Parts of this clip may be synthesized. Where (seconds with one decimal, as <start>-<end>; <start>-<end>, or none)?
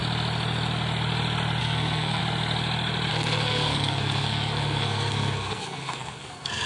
1.6-2.2; 3.1-6.7